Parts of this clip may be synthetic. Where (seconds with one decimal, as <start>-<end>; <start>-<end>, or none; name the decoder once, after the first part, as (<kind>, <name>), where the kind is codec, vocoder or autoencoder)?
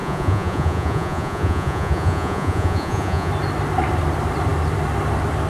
0.0-3.3 (vocoder, Vocos)